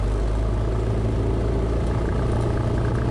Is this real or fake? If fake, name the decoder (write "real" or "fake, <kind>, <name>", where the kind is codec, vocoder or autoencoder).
real